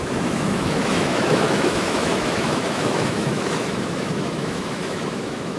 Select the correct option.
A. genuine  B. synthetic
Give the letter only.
B